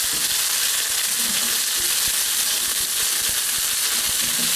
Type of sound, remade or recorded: recorded